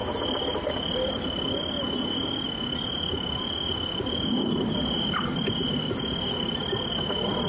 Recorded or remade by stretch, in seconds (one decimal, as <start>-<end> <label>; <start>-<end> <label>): 0.0-7.5 recorded